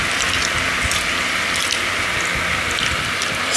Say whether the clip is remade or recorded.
recorded